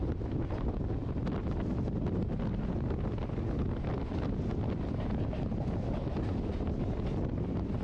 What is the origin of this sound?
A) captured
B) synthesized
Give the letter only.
A